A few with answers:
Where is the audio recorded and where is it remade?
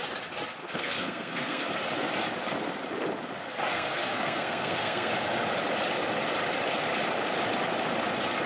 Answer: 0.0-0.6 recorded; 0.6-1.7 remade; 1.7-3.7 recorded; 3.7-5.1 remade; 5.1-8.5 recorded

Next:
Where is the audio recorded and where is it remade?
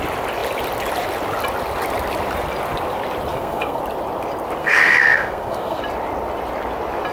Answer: 0.0-3.3 recorded; 3.3-3.8 remade; 3.8-4.6 recorded; 4.6-5.8 remade; 5.8-7.1 recorded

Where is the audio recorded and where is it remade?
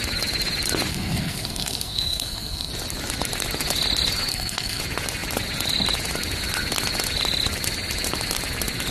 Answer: 0.0-0.9 recorded; 0.9-2.7 remade; 2.7-4.3 recorded; 4.3-4.8 remade; 4.8-8.9 recorded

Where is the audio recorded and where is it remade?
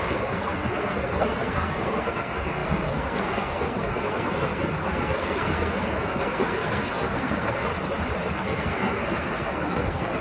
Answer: 0.0-7.7 remade; 7.7-8.3 recorded; 8.3-10.2 remade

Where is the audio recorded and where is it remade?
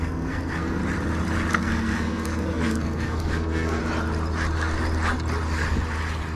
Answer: 0.0-0.8 remade; 0.8-1.5 recorded; 1.5-3.8 remade; 3.8-6.4 recorded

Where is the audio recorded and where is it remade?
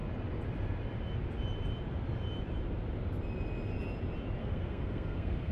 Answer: 0.0-4.4 recorded; 4.4-5.5 remade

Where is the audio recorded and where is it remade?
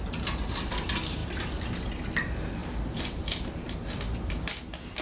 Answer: 0.0-5.0 recorded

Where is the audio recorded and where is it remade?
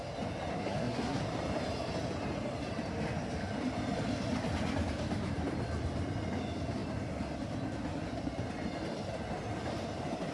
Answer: 0.0-0.5 recorded; 0.5-1.2 remade; 1.2-10.3 recorded